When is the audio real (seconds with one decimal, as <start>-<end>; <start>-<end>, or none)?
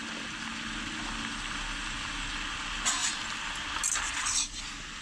0.0-5.0